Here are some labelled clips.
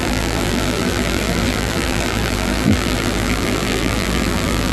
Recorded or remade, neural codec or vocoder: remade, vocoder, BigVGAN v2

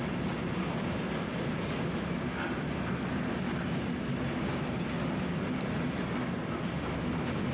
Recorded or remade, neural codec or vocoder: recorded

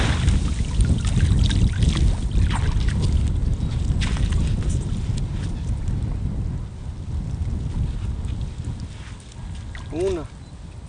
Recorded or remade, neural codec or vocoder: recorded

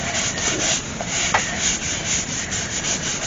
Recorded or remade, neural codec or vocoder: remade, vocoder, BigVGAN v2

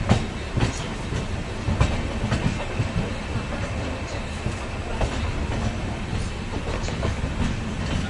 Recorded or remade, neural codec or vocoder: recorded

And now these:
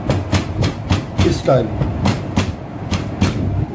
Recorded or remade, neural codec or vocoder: remade, vocoder, BigVGAN v2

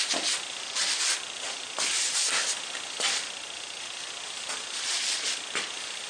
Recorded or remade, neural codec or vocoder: recorded